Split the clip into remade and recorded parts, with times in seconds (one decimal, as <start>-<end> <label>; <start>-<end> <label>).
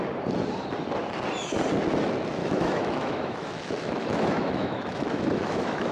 0.0-2.4 recorded; 2.4-5.9 remade